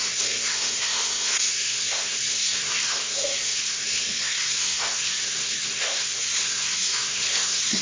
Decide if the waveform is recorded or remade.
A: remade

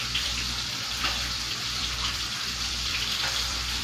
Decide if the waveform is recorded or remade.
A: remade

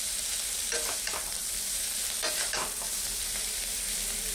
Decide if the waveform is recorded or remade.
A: remade